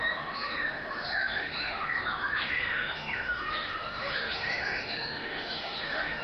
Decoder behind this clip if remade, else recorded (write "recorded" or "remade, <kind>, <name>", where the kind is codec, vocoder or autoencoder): remade, autoencoder, DAC-VAE